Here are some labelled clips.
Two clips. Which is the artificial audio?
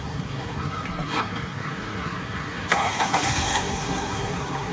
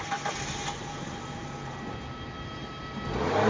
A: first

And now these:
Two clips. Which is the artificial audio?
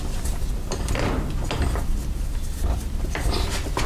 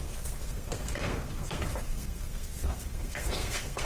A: second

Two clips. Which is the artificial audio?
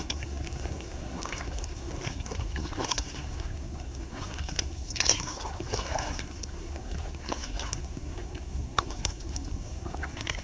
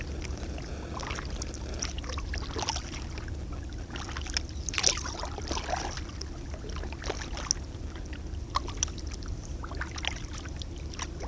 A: first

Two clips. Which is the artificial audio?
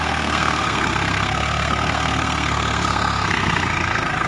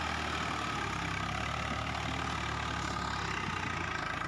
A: first